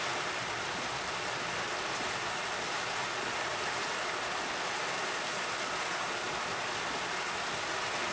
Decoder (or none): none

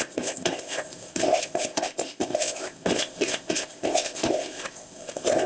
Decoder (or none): codec, ZipCodec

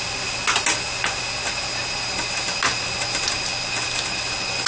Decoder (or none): none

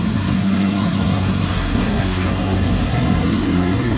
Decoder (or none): codec, SNAC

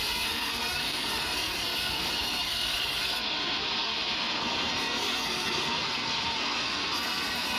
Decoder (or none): codec, SNAC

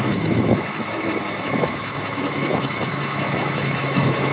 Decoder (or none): autoencoder, DAC-VAE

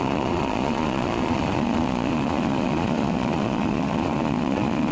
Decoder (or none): vocoder, Vocos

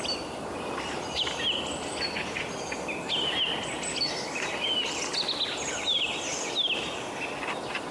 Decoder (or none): none